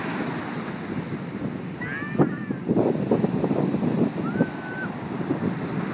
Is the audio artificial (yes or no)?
no